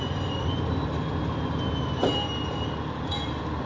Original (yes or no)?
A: yes